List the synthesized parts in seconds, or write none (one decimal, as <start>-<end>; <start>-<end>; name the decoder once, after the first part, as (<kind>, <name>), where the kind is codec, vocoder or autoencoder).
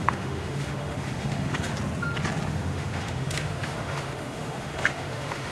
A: 0.0-1.7 (autoencoder, DAC-VAE); 2.5-5.5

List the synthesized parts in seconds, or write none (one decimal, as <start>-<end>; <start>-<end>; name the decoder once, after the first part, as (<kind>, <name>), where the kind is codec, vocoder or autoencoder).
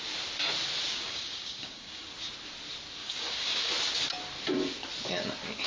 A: 0.9-2.1 (codec, DAC); 3.0-3.7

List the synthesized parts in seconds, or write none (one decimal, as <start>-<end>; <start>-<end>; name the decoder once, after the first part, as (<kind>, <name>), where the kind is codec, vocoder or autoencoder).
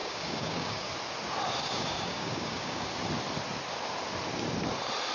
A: 0.0-0.9 (codec, DAC); 1.6-2.9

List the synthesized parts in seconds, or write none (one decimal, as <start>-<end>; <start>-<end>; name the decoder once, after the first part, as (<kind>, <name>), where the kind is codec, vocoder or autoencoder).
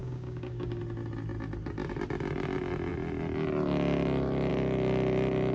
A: 0.0-0.8 (codec, DAC)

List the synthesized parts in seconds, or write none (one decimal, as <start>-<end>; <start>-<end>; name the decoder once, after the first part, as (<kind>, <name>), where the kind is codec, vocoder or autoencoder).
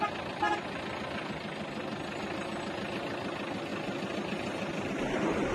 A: 3.7-4.9 (vocoder, BigVGAN v2)